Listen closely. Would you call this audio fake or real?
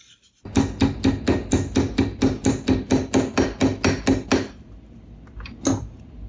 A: real